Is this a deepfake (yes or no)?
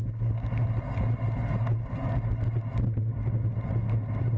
no